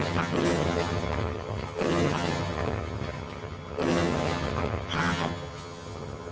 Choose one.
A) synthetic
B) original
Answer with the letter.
A